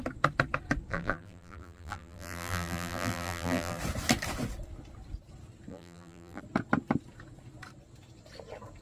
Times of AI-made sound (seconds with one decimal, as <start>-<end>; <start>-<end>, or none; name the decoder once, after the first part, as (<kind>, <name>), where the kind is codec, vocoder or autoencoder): 0.9-3.8 (vocoder, BigVGAN v2); 5.7-6.4